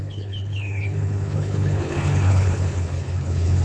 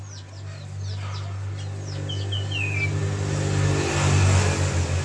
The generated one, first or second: first